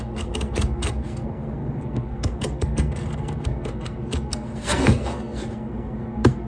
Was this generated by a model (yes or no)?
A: yes